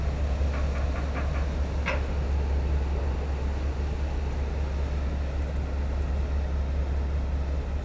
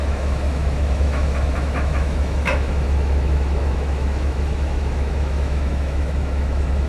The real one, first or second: first